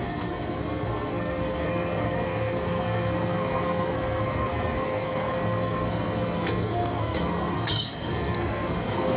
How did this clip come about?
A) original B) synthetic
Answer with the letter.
B